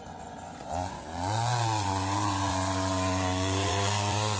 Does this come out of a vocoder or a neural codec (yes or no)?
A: yes